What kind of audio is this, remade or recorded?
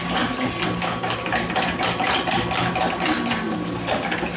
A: recorded